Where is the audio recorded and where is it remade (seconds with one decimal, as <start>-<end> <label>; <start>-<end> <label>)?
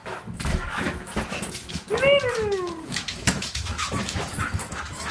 0.0-1.7 remade; 1.7-2.4 recorded; 2.4-5.1 remade